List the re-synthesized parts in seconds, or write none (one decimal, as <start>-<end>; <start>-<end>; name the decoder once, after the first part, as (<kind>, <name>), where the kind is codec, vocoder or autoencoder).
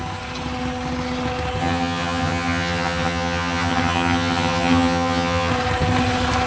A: 1.6-5.5 (vocoder, HiFi-GAN)